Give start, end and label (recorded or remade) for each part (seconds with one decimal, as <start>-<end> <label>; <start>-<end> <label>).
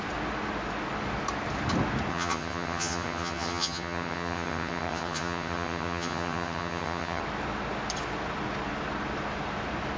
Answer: 0.0-2.1 recorded; 2.1-7.2 remade; 7.2-10.0 recorded